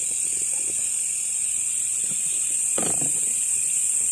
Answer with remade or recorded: recorded